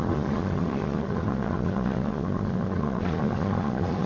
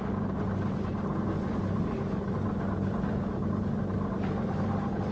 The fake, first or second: first